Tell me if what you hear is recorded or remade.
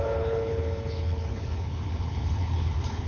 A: remade